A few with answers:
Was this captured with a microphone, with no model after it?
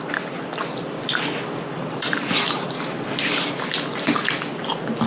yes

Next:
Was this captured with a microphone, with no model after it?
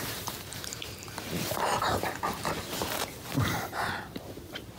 no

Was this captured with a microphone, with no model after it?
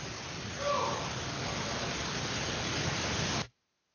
yes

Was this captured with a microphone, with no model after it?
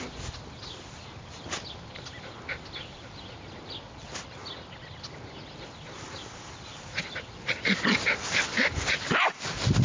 yes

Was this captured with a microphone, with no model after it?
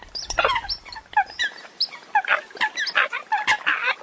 yes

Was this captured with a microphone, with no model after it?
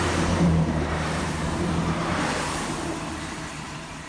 no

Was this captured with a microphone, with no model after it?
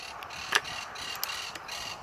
yes